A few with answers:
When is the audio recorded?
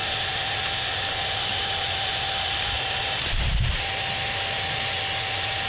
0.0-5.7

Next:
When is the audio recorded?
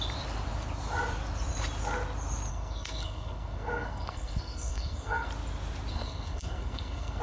0.0-2.5; 5.3-5.9